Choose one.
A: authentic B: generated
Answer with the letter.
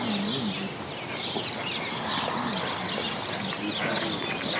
A